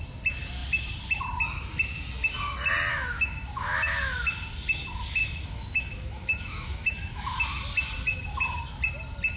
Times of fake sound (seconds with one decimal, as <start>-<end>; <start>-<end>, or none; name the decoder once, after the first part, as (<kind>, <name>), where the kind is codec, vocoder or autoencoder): 2.9-4.1 (autoencoder, DAC-VAE); 5.2-7.4